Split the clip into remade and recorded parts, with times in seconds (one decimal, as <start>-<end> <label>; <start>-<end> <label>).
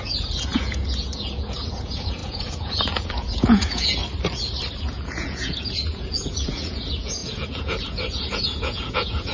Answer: 0.0-4.0 remade; 4.0-4.8 recorded; 4.8-9.3 remade